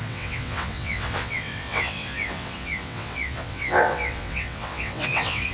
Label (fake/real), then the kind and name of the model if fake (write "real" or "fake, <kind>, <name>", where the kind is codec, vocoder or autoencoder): fake, vocoder, WaveNeXt